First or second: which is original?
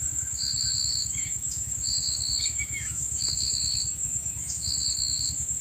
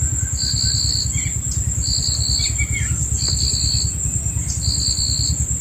second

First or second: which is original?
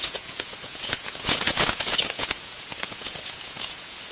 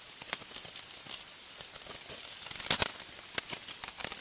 second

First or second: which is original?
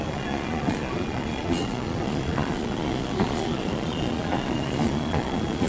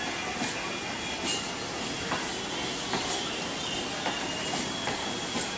second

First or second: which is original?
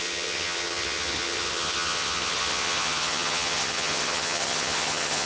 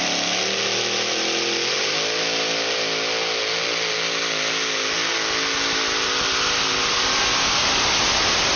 second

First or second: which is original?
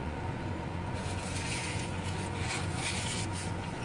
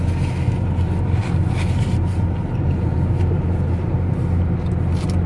second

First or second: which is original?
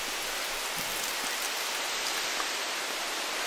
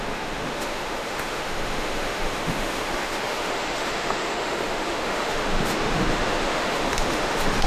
first